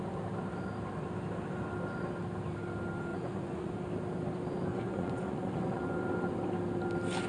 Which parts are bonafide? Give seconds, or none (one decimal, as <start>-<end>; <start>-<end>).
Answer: 0.0-3.1; 3.7-4.7; 5.8-7.3